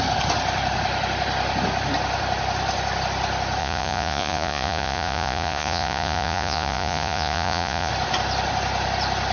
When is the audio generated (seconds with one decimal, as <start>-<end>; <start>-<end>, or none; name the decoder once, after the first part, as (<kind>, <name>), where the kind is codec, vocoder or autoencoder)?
3.6-7.9 (vocoder, Vocos)